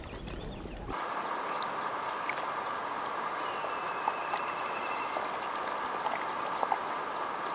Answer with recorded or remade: recorded